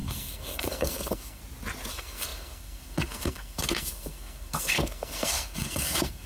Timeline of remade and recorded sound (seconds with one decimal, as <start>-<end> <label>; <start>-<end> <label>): 0.0-1.4 remade; 1.4-1.9 recorded; 1.9-6.3 remade